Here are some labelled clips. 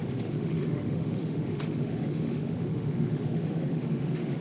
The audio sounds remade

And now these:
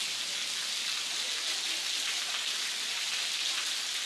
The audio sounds recorded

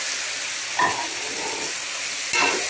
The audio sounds recorded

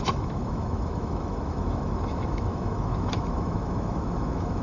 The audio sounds remade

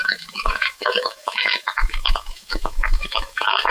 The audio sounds remade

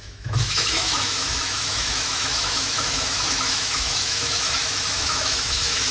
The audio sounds remade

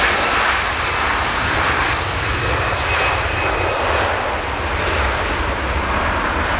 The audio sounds recorded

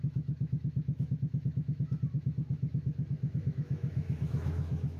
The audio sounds remade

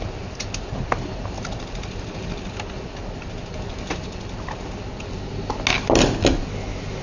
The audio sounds recorded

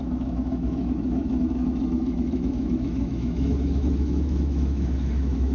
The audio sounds remade